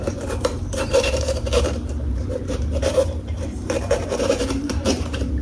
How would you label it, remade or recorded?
remade